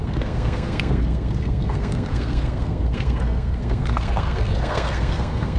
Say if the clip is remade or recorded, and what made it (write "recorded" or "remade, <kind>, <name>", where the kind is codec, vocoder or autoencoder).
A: remade, codec, SNAC